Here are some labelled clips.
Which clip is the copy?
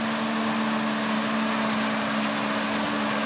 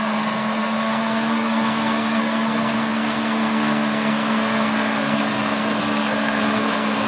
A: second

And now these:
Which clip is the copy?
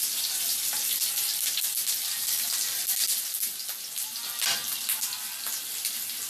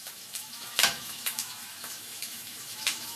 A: second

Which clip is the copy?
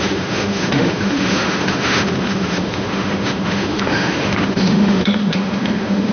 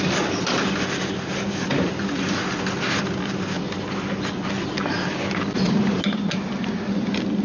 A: first